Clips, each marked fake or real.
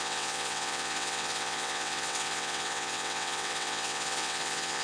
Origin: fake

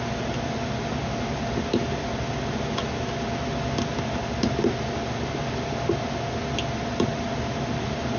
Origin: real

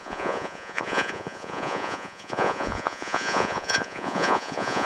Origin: fake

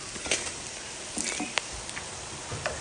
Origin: fake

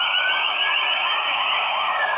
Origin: fake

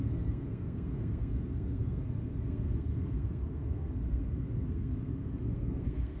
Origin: fake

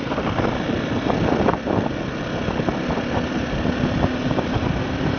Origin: fake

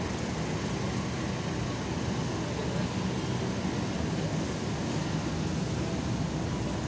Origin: real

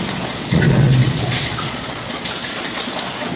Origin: fake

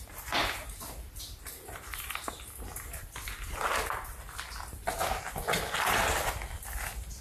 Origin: real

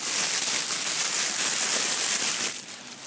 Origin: real